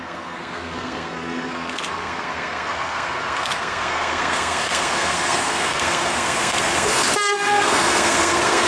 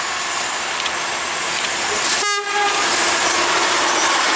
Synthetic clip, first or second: first